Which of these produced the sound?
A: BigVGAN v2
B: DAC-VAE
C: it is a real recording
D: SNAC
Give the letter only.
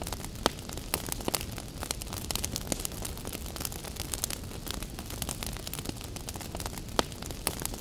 C